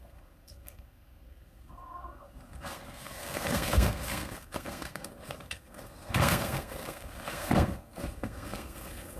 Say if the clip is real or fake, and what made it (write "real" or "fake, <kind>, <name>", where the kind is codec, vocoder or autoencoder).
fake, codec, SNAC